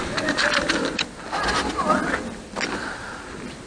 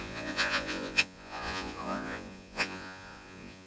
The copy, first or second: second